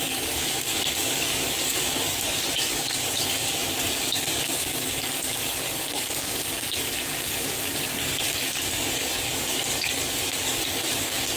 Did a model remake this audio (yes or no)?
yes